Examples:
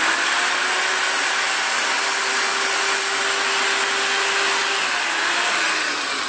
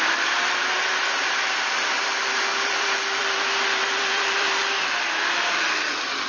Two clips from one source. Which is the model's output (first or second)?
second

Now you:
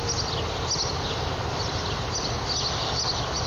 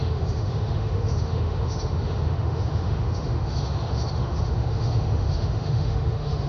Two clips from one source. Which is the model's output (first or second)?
second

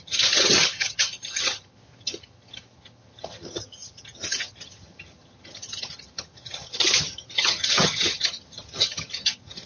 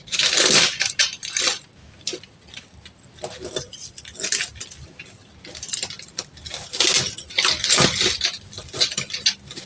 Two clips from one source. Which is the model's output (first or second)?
first